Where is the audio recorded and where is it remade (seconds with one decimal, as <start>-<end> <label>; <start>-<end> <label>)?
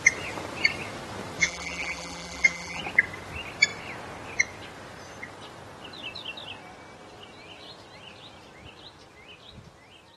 0.0-1.4 recorded; 1.4-2.8 remade; 2.8-10.2 recorded